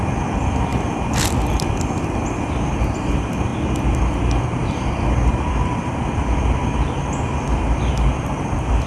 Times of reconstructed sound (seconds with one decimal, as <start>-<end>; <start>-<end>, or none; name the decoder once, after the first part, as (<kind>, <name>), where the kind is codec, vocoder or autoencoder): 0.0-3.5 (vocoder, BigVGAN v2); 8.2-8.9

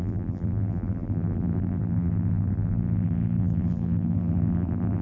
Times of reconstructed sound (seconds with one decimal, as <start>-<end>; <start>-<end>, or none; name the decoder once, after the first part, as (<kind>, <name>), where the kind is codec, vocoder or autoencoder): 0.0-5.0 (vocoder, BigVGAN v2)

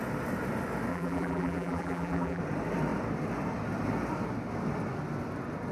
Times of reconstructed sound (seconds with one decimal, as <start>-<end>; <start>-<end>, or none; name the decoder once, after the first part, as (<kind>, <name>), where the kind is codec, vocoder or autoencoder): 0.9-2.4 (vocoder, BigVGAN v2)

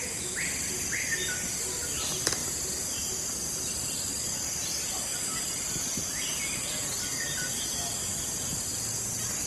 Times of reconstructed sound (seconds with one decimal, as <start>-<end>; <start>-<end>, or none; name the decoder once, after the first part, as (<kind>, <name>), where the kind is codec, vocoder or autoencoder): 2.4-3.1 (vocoder, BigVGAN v2)